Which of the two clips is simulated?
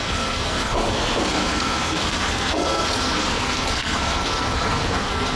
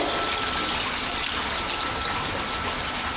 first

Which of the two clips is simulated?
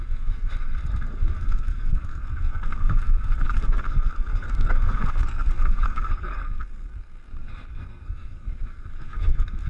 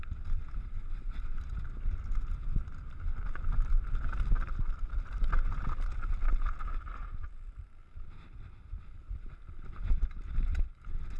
first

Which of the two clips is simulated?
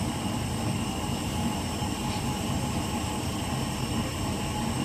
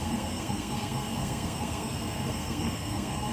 second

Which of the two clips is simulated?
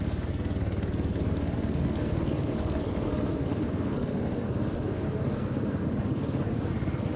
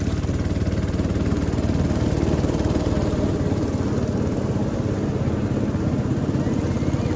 first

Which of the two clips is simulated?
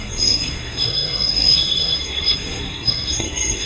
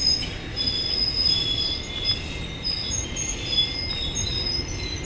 first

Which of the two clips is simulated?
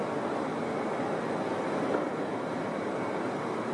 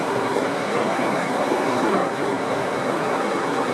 second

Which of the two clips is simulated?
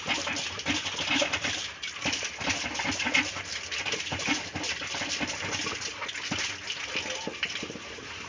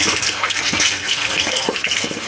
second